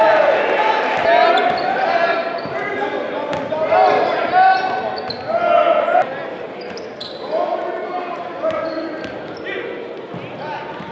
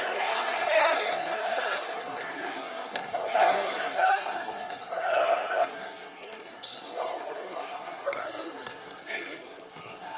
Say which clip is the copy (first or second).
second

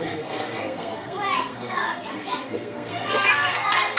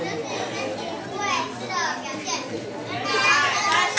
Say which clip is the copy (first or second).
first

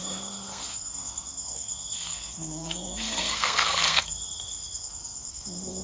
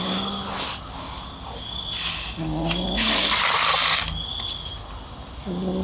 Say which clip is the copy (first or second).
first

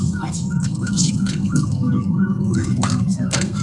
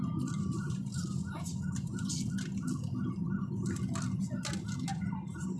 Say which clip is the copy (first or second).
first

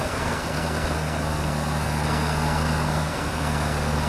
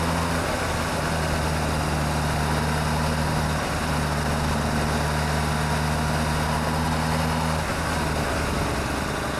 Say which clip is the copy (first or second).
first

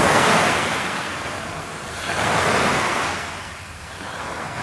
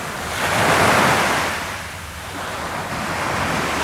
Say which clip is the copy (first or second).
first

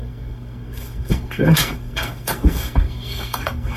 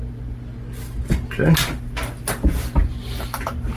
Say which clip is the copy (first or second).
first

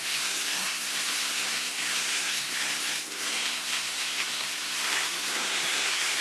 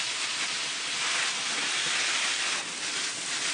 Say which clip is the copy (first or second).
first